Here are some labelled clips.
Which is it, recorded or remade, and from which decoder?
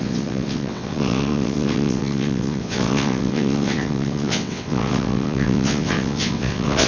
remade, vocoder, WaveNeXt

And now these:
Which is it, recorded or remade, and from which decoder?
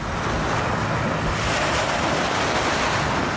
recorded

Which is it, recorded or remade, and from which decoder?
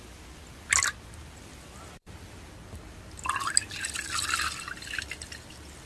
recorded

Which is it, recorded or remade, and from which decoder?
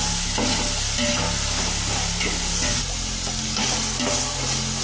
recorded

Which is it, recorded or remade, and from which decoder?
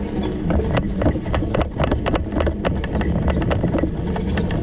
recorded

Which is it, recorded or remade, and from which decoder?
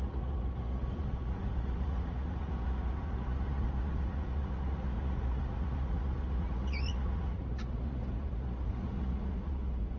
remade, vocoder, Vocos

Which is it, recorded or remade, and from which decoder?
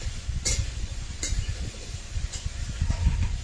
remade, vocoder, Vocos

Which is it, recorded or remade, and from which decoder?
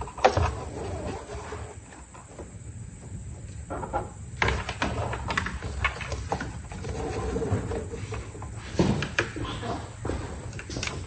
recorded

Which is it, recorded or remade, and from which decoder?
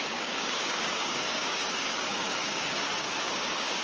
remade, codec, DAC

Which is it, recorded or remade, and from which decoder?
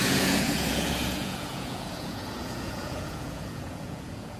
remade, vocoder, Vocos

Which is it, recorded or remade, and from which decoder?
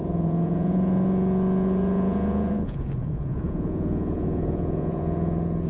remade, vocoder, Vocos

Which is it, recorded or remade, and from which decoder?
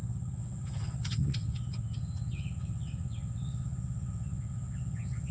remade, vocoder, WaveNeXt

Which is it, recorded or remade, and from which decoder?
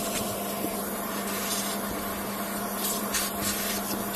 recorded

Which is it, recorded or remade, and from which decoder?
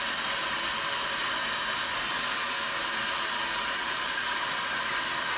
recorded